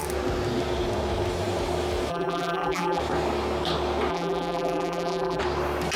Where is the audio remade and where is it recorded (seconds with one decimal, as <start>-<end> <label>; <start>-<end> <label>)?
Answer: 0.0-2.1 recorded; 2.1-3.0 remade; 3.0-4.1 recorded; 4.1-5.4 remade; 5.4-6.0 recorded